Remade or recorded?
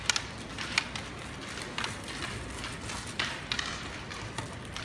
recorded